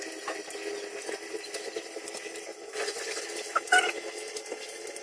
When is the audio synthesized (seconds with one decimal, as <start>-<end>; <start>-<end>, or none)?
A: 2.5-3.2